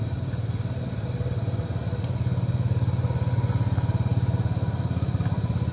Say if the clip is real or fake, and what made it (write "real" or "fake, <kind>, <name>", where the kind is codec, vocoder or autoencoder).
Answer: real